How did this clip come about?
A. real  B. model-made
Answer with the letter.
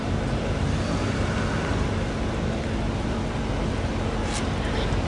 A